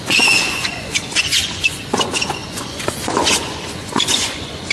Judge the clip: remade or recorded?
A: remade